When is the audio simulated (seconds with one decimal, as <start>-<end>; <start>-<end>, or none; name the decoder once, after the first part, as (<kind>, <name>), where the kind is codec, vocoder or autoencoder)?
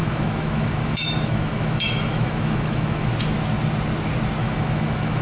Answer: 0.0-3.1 (autoencoder, DAC-VAE); 4.4-5.2